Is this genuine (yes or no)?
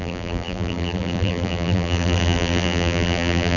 no